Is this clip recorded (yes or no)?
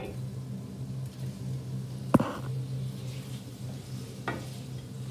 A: yes